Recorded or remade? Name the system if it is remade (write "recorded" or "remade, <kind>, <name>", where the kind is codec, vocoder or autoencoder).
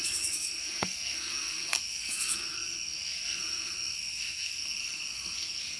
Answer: remade, codec, SNAC